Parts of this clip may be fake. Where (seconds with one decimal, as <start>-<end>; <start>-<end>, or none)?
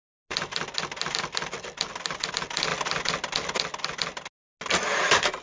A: none